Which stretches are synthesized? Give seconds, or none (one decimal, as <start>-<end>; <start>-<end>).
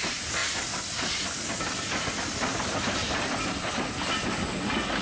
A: none